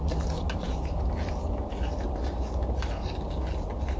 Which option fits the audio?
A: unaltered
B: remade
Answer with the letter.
A